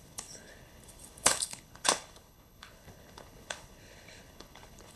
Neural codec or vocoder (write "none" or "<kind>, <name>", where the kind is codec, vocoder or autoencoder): codec, HILCodec